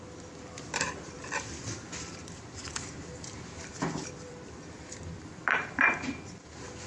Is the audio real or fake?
fake